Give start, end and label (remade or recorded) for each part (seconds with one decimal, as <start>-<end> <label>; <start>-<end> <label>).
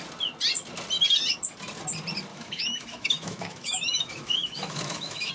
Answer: 0.0-2.3 recorded; 2.3-5.3 remade